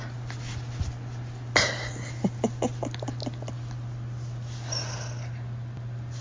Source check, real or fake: real